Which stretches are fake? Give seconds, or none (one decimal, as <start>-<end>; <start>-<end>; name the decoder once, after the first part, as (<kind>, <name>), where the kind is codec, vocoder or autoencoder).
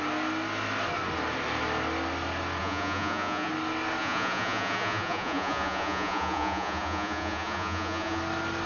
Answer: 2.6-3.5 (vocoder, Vocos); 4.0-8.2